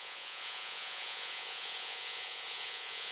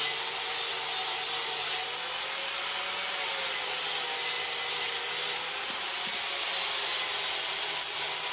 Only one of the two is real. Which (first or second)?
second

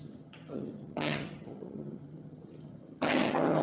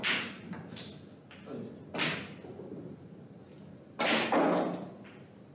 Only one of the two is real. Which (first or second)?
second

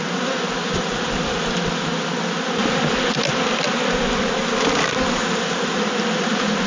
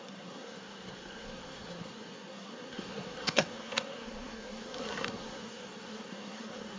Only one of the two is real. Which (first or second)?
first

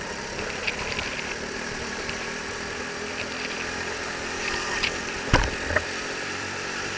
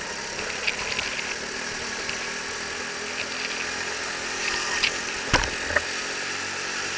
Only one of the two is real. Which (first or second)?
second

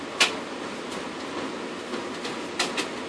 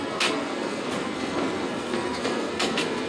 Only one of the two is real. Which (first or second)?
first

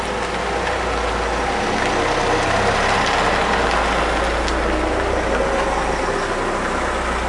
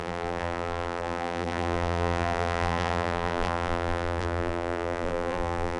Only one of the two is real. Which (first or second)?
first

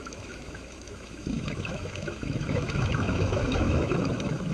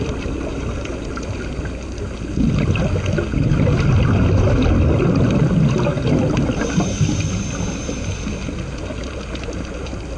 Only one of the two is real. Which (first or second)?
second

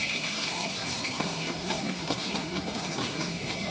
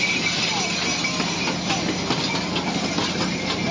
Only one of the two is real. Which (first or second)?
second